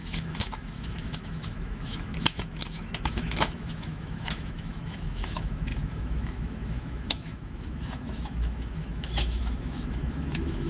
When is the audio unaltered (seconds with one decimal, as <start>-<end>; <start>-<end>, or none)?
none